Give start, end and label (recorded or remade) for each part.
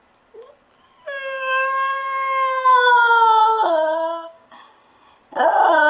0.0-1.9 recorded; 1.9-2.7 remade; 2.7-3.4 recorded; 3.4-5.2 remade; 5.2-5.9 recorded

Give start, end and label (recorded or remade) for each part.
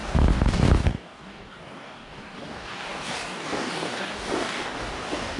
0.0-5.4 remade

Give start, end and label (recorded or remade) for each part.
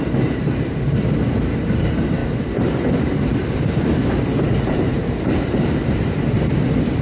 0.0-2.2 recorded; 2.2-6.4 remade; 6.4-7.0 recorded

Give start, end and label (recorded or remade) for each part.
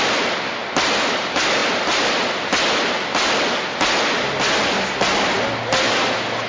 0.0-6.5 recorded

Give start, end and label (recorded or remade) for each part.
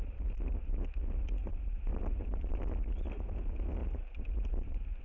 0.0-1.9 recorded; 1.9-2.7 remade; 2.7-3.8 recorded; 3.8-4.3 remade; 4.3-5.0 recorded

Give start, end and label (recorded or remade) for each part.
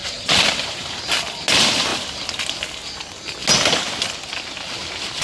0.0-5.2 recorded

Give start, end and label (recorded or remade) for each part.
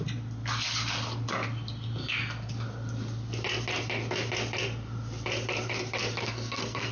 0.0-6.2 recorded; 6.2-6.9 remade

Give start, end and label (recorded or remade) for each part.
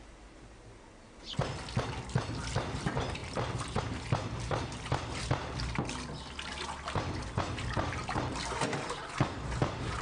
0.0-3.2 recorded; 3.2-3.8 remade; 3.8-10.0 recorded